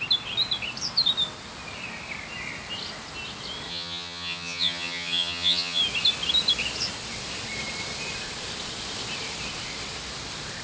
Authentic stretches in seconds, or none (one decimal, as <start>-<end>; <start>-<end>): 0.0-3.7; 5.8-10.6